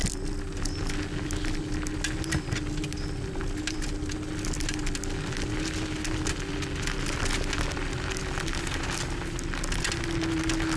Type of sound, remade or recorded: recorded